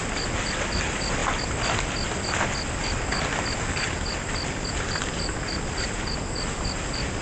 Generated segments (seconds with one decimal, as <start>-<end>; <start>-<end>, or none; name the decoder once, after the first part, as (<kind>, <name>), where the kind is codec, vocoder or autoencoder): none